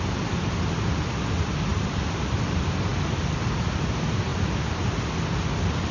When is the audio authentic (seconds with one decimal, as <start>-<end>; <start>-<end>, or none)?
0.0-5.9